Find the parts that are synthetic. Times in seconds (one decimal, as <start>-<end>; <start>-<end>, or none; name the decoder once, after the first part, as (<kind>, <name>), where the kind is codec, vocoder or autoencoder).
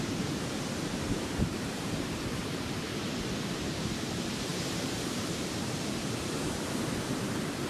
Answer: 0.0-2.9 (vocoder, BigVGAN v2); 3.7-7.7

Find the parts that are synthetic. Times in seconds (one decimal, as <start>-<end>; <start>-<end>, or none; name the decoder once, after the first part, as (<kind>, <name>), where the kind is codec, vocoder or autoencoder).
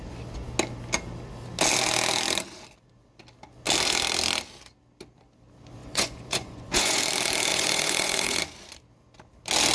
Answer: 5.8-7.0 (vocoder, Vocos); 7.5-8.4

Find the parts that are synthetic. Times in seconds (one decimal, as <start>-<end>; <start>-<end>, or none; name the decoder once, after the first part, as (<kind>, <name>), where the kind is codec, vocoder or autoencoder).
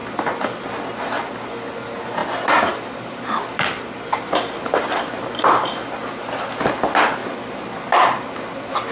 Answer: 0.0-0.7 (vocoder, BigVGAN v2); 2.2-6.7; 7.2-8.5